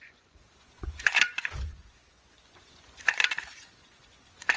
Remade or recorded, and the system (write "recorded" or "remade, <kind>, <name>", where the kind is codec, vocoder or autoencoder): remade, vocoder, Vocos